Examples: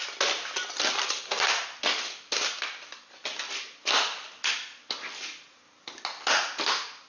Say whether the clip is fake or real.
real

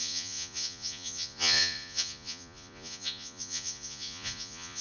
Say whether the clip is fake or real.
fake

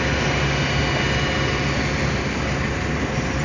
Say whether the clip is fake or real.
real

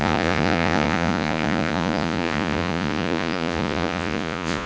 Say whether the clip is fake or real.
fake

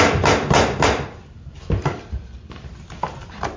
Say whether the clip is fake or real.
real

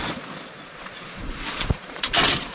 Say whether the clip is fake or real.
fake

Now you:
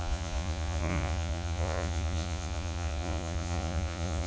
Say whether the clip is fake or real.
fake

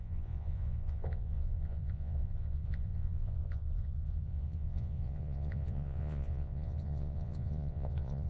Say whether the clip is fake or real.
fake